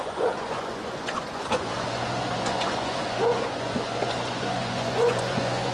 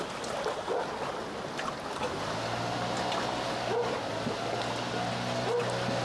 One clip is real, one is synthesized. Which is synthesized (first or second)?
first